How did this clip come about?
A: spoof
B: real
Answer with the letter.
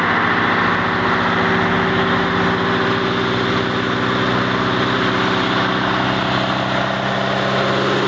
B